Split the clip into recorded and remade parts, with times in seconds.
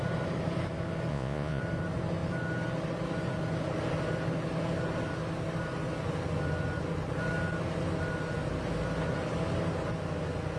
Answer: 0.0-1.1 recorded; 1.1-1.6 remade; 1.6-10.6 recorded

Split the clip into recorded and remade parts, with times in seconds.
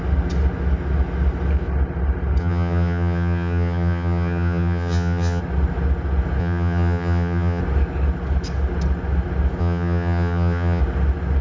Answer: 0.0-2.4 recorded; 2.4-5.4 remade; 5.4-6.4 recorded; 6.4-7.6 remade; 7.6-9.6 recorded; 9.6-10.8 remade; 10.8-11.4 recorded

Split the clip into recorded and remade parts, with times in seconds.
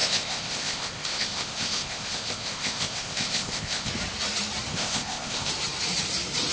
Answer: 0.0-3.9 remade; 3.9-4.7 recorded; 4.7-5.5 remade; 5.5-6.5 recorded